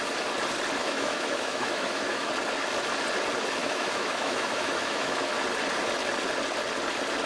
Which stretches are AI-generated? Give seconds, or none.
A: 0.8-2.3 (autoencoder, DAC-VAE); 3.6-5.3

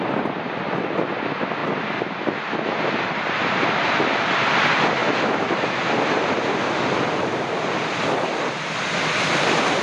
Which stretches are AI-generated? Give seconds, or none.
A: none

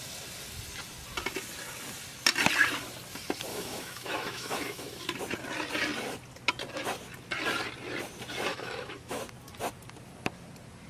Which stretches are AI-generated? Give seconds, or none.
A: 3.5-5.0 (autoencoder, DAC-VAE); 8.5-9.2

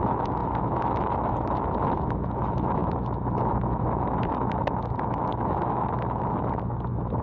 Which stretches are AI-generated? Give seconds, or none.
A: 0.0-7.2 (autoencoder, DAC-VAE)

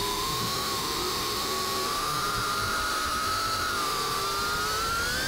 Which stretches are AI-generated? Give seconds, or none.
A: 0.0-4.2 (autoencoder, DAC-VAE)

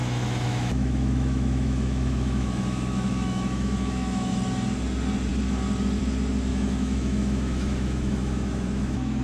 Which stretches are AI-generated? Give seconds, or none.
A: 0.0-4.3 (autoencoder, DAC-VAE); 6.5-9.2

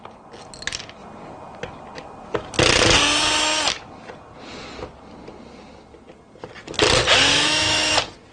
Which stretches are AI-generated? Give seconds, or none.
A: 7.3-7.9 (autoencoder, DAC-VAE)